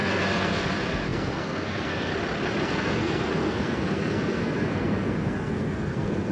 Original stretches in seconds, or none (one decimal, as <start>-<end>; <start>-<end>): 2.1-2.6